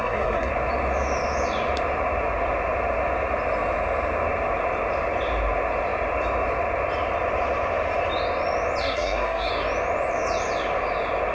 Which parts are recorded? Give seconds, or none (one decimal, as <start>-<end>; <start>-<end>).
0.5-8.8; 9.5-11.3